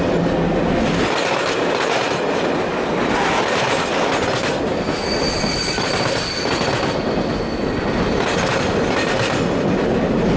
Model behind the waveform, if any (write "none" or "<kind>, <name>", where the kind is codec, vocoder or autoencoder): none